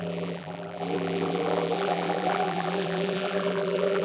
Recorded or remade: remade